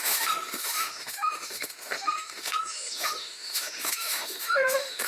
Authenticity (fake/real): fake